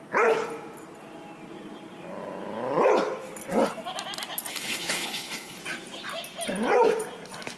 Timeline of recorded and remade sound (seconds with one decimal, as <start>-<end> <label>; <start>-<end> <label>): 0.0-4.5 recorded; 4.5-5.6 remade; 5.6-7.6 recorded